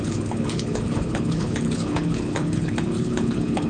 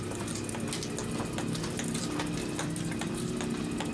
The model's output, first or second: first